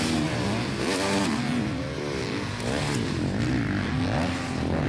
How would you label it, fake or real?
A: real